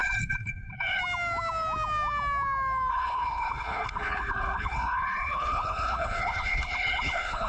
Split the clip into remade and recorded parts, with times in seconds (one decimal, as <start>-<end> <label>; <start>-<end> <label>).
0.0-1.0 remade; 1.0-2.9 recorded; 2.9-7.5 remade